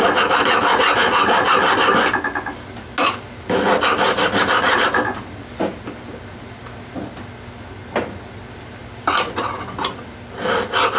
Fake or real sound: real